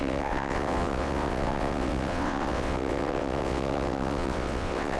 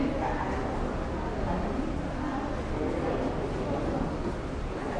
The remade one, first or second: first